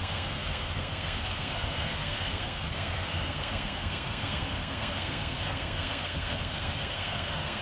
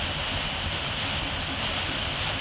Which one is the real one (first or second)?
second